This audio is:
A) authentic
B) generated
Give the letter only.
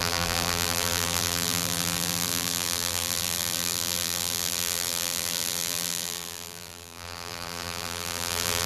B